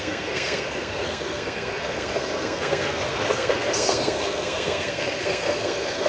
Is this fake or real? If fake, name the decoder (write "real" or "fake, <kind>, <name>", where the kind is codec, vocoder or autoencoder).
fake, codec, SNAC